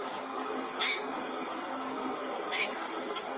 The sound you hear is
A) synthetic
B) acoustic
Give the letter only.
A